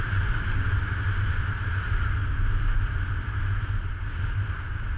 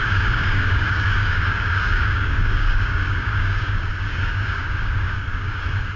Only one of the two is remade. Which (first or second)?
second